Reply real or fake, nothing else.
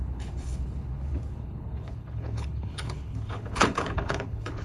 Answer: fake